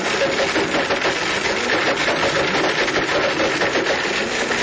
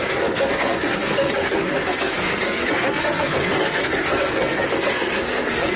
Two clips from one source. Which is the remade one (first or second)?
second